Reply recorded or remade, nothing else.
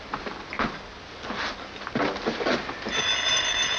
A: recorded